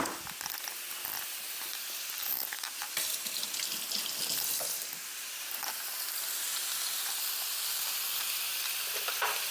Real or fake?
fake